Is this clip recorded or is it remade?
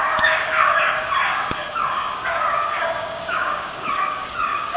remade